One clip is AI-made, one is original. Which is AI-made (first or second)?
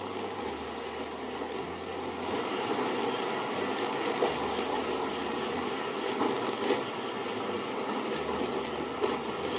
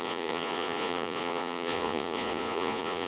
second